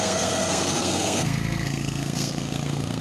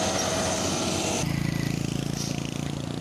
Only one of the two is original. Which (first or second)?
second